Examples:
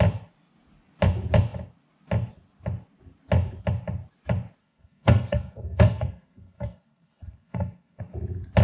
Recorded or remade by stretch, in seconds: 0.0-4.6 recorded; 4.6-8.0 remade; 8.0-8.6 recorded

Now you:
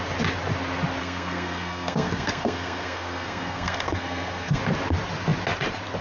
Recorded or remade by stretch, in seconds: 0.0-1.0 recorded; 1.0-4.6 remade; 4.6-6.0 recorded

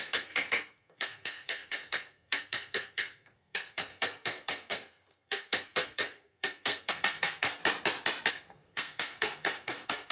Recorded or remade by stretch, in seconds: 0.0-7.6 remade; 7.6-8.3 recorded; 8.3-10.1 remade

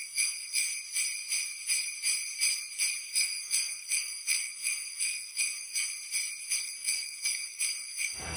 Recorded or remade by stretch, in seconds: 0.0-0.7 remade; 0.7-3.0 recorded; 3.0-5.9 remade; 5.9-6.6 recorded; 6.6-8.4 remade